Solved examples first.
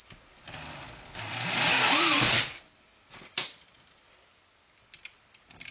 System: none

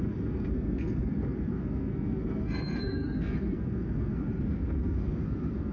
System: codec, SNAC